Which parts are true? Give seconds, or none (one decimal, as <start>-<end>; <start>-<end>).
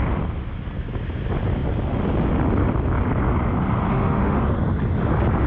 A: 0.0-3.9; 4.4-5.5